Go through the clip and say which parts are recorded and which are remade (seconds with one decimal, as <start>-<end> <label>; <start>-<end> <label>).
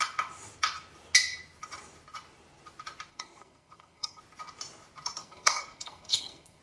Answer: 0.0-3.1 recorded; 3.1-4.2 remade; 4.2-5.2 recorded; 5.2-6.6 remade